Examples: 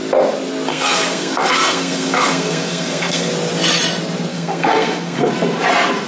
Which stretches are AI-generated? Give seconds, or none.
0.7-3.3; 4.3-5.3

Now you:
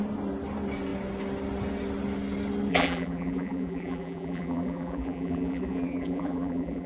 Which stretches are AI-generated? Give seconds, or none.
2.7-6.9

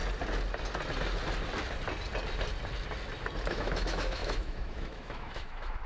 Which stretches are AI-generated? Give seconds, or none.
3.5-5.9

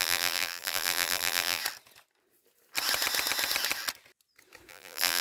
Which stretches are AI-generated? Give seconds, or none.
0.0-1.6; 4.7-5.2

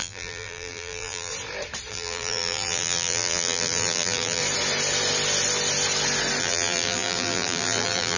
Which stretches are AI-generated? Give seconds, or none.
0.0-1.3; 1.9-4.4; 6.4-8.2

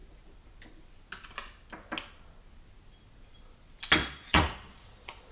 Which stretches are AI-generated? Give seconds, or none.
4.0-5.3